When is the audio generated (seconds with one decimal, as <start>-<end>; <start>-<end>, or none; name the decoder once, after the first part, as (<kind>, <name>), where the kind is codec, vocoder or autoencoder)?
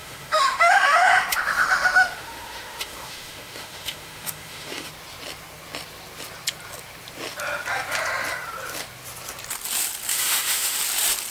0.0-4.9 (autoencoder, DAC-VAE); 10.1-10.8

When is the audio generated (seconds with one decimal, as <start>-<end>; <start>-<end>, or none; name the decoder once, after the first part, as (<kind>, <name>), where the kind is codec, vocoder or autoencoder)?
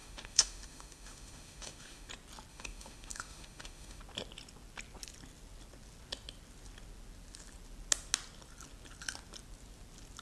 0.0-2.1 (autoencoder, DAC-VAE); 2.5-4.0